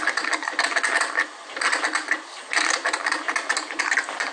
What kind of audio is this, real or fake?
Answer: real